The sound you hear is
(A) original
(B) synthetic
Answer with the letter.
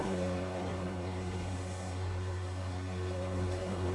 B